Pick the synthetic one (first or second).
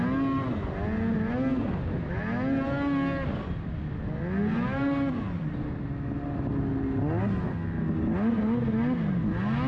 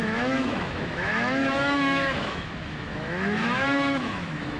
second